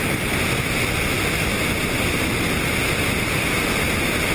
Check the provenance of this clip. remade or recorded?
recorded